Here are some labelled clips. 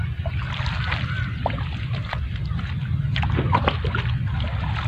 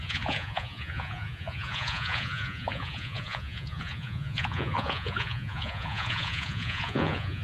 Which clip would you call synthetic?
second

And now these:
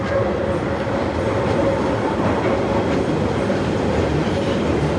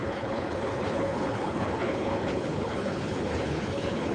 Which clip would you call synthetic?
second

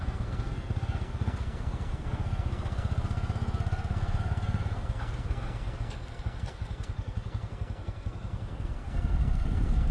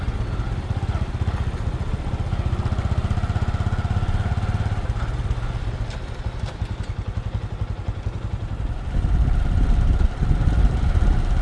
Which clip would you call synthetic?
first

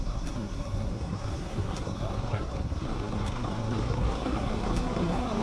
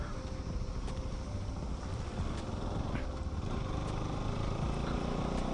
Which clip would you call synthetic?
first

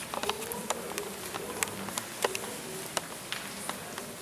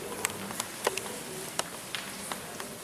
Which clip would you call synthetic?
second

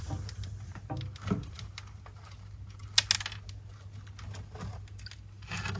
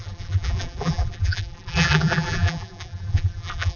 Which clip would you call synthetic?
second